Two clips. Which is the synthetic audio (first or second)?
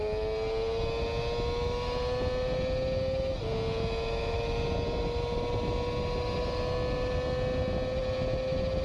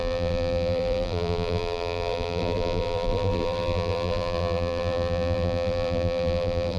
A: second